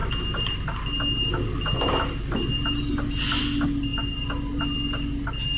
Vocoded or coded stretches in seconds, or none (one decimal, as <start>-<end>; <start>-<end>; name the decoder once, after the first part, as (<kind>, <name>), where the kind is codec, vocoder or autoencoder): none